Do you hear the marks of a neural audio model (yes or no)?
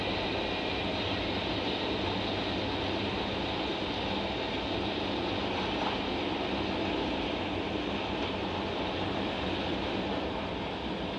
no